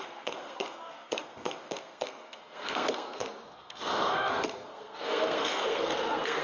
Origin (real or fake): fake